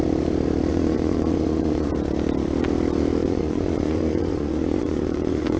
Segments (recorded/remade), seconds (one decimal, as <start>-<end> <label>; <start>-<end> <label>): 0.0-0.7 recorded; 0.7-1.9 remade; 1.9-3.2 recorded; 3.2-5.6 remade